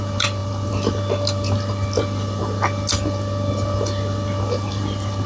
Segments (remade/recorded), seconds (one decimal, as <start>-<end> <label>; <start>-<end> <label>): 0.0-5.3 recorded

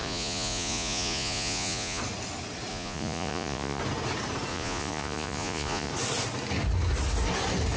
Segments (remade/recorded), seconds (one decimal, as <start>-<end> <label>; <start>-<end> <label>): 0.0-2.0 remade; 2.0-2.7 recorded; 2.7-3.8 remade; 3.8-4.5 recorded; 4.5-5.9 remade; 5.9-7.8 recorded

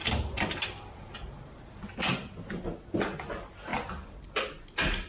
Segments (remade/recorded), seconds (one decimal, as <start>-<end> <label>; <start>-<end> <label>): 0.0-5.1 recorded

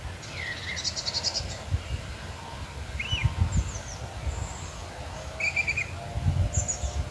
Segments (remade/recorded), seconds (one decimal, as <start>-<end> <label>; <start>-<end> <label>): 0.0-7.1 recorded

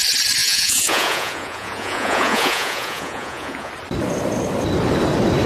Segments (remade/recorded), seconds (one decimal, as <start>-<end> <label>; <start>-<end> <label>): 0.0-0.4 recorded; 0.4-3.7 remade; 3.7-5.5 recorded

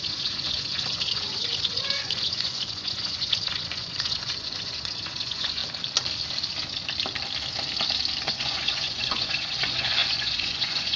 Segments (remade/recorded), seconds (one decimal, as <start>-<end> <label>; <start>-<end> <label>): 0.0-5.6 remade; 5.6-8.3 recorded; 8.3-11.0 remade